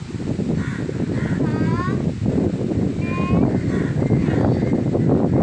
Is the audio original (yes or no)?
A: yes